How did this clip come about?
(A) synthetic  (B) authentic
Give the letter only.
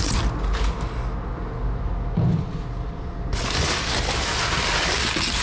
B